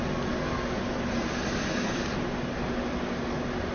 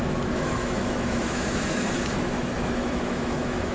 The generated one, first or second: second